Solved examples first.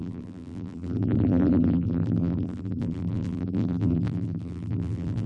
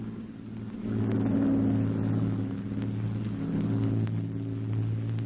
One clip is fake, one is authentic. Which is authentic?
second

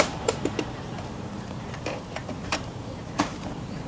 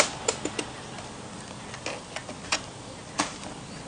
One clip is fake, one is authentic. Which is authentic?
second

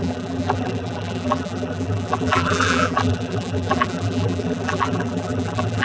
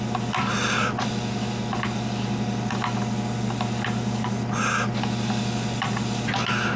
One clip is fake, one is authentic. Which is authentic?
second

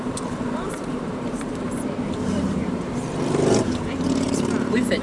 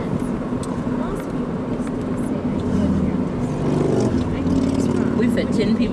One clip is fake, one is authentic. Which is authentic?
second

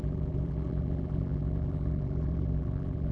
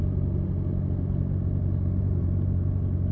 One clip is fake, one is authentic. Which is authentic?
second